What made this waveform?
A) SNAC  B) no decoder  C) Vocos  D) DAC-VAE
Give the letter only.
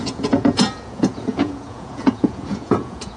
C